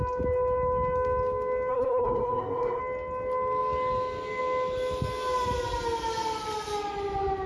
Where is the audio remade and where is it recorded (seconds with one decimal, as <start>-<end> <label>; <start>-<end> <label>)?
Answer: 0.0-1.7 recorded; 1.7-2.8 remade; 2.8-7.5 recorded